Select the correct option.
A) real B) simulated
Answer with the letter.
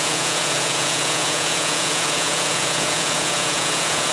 B